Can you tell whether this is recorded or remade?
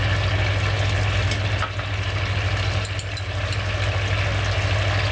recorded